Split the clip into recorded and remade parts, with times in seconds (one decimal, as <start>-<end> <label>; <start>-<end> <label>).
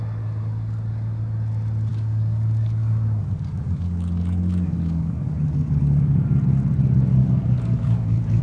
0.0-1.9 recorded; 1.9-6.3 remade; 6.3-7.1 recorded; 7.1-8.4 remade